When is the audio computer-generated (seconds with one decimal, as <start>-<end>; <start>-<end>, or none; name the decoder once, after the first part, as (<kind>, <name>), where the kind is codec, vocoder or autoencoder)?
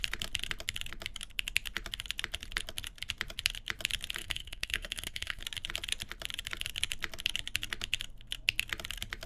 4.2-5.4 (codec, SNAC)